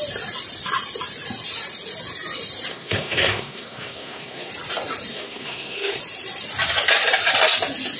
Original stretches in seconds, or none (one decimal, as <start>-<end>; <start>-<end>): 0.0-2.7; 4.5-5.1; 6.0-8.0